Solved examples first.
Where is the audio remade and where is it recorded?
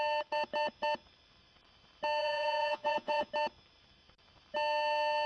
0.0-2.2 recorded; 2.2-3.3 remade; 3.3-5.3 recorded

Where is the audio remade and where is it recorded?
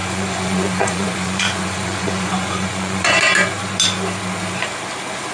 0.0-3.2 remade; 3.2-5.3 recorded